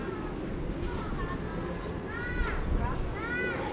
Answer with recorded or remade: recorded